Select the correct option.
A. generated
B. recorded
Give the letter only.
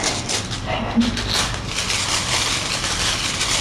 B